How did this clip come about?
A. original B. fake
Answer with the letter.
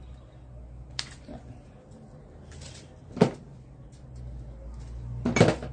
A